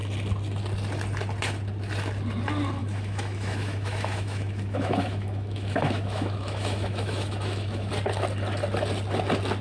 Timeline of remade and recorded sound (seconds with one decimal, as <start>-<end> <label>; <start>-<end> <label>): 0.0-2.8 recorded; 2.8-7.9 remade; 7.9-9.6 recorded